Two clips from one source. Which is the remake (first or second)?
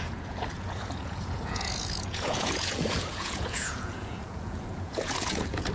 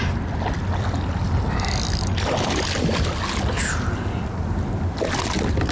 first